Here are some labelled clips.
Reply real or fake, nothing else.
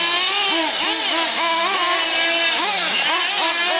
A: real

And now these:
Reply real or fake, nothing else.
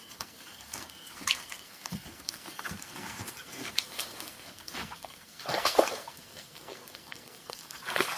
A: fake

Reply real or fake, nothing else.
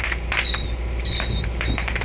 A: real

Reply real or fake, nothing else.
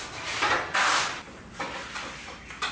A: real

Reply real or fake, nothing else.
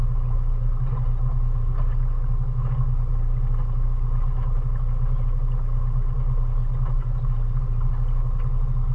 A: real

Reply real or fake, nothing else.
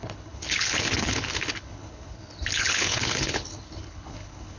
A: fake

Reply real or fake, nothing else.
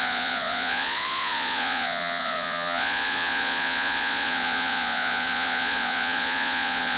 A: fake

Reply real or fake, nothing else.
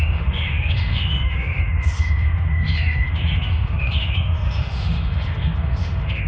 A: fake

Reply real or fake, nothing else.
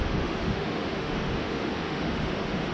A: fake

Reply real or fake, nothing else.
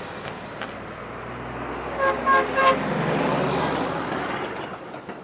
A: real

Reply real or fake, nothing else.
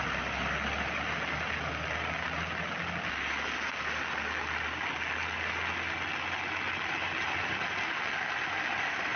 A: real